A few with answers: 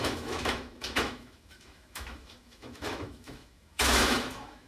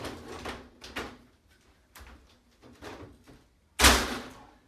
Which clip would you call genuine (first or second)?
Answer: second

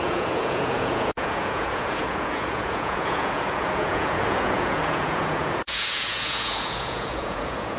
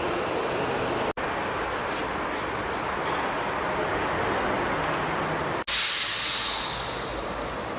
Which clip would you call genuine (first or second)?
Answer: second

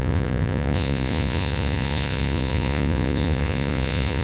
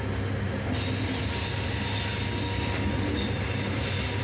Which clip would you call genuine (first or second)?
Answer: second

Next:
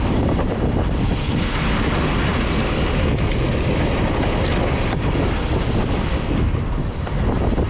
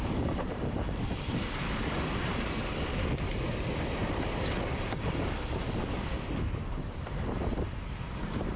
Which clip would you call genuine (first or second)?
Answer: first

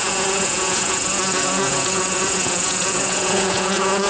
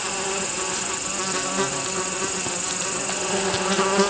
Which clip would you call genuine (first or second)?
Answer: second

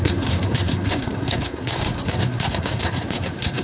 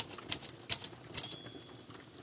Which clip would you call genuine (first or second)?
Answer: second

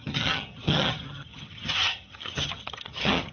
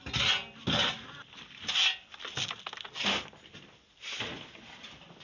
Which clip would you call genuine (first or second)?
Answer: second